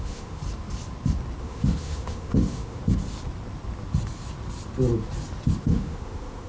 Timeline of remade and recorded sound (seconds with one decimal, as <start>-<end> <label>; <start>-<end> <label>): 0.0-0.4 remade; 0.4-1.4 recorded; 1.4-2.8 remade; 2.8-5.6 recorded; 5.6-6.5 remade